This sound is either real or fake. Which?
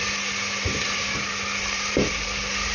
real